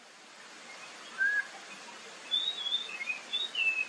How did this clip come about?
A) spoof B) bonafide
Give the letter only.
B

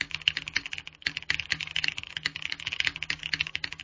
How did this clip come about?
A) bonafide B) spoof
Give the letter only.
B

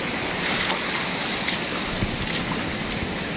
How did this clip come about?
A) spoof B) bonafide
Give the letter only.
B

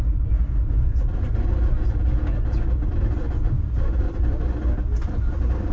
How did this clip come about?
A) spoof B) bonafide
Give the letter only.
B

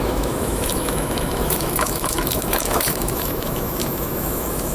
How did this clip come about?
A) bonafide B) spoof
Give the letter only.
B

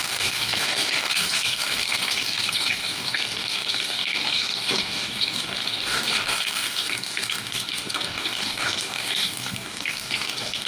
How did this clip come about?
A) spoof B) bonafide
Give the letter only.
A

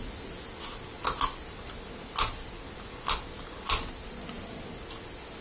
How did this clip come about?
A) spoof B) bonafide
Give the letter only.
B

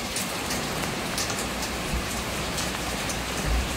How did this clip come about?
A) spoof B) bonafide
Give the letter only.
A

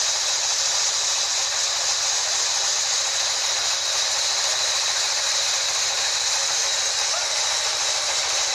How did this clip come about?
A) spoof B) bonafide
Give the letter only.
A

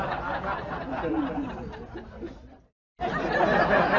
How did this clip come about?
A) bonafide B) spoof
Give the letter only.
A